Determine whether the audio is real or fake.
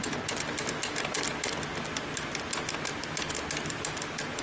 real